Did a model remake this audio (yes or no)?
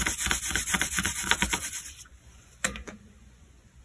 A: yes